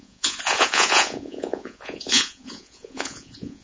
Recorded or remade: remade